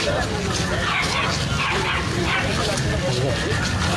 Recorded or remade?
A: recorded